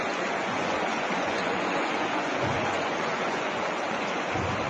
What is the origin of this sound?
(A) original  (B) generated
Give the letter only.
B